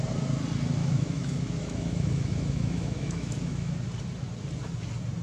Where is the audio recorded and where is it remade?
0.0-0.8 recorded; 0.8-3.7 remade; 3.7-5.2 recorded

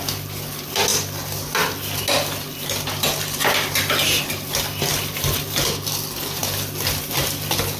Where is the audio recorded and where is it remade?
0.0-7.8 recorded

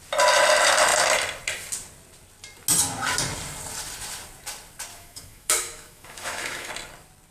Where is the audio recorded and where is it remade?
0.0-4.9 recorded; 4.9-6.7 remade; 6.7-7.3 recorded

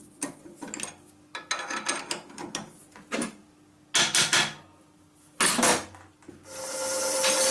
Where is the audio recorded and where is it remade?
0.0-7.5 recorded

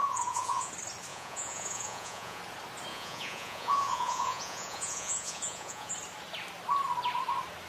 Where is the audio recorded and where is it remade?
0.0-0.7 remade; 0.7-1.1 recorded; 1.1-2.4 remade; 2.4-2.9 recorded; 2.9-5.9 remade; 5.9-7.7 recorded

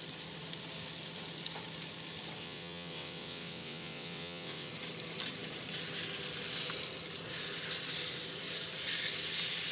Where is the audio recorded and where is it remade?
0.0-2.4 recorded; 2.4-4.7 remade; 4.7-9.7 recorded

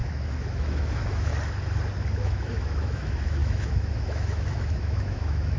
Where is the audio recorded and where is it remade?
0.0-1.3 remade; 1.3-2.2 recorded; 2.2-5.6 remade